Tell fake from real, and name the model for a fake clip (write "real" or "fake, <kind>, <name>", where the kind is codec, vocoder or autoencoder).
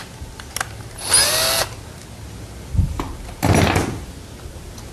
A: real